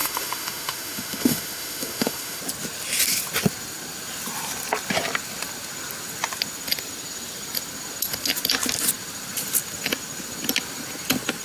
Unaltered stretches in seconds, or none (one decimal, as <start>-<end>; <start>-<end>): 2.4-11.4

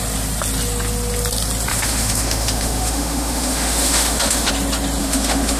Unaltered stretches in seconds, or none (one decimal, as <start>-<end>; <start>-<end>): 0.0-1.7; 4.5-5.0

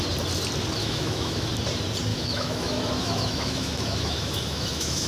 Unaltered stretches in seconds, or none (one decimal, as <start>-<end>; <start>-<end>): 0.0-0.8; 1.5-2.1

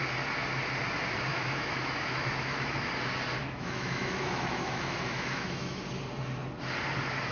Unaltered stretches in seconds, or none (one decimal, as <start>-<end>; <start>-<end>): 0.0-1.3; 2.9-3.4; 5.8-7.3

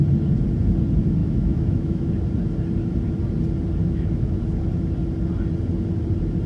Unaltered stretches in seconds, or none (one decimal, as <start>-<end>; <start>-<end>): 0.0-1.2; 2.1-3.8; 4.4-6.5

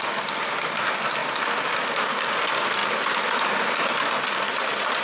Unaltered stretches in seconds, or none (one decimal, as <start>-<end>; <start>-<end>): 0.0-5.0

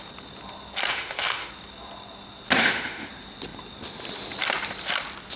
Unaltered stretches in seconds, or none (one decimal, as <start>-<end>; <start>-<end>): 0.0-0.9; 1.5-2.6; 3.1-5.4

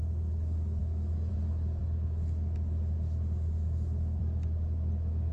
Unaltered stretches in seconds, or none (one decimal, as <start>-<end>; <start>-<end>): 0.0-0.8; 1.3-5.3